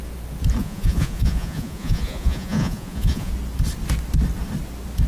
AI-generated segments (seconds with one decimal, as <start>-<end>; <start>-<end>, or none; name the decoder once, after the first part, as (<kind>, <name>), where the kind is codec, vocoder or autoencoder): 0.6-3.3 (vocoder, Vocos)